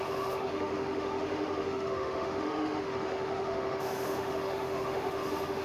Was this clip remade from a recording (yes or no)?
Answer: yes